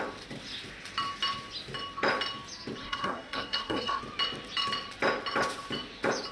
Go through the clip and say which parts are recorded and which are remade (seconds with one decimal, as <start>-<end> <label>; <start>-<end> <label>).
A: 0.0-2.8 recorded; 2.8-4.0 remade; 4.0-6.3 recorded